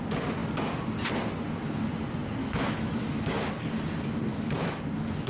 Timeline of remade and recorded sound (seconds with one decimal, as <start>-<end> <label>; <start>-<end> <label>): 0.0-2.4 recorded; 2.4-3.5 remade; 3.5-4.3 recorded; 4.3-4.8 remade; 4.8-5.3 recorded